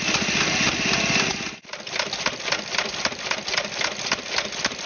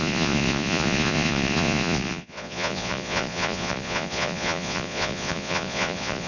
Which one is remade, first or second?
second